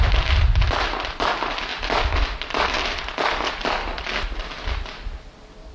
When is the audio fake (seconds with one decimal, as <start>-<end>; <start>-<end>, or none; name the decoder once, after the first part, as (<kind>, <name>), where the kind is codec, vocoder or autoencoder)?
none